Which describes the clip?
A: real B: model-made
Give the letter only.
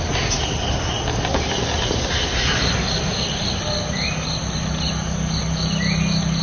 A